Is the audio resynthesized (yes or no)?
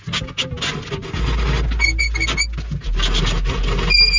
no